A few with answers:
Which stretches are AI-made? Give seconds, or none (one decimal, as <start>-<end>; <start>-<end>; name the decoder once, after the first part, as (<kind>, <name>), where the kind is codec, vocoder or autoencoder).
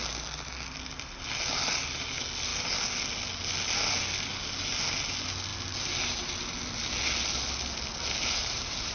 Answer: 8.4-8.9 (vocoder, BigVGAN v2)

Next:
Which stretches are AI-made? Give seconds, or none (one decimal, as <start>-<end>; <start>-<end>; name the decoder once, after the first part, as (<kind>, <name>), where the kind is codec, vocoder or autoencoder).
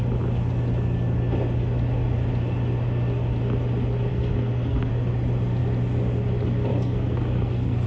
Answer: 4.1-4.9 (codec, SNAC); 6.7-7.9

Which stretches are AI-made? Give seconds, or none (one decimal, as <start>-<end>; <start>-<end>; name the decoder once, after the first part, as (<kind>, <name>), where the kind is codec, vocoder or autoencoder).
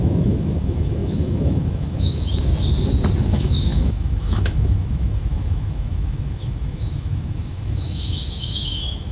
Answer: 0.0-2.5 (autoencoder, DAC-VAE); 3.2-9.1